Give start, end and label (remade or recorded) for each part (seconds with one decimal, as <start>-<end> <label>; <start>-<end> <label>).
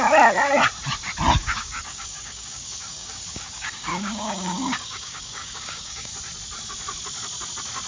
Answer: 0.0-1.4 recorded; 1.4-6.1 remade; 6.1-7.9 recorded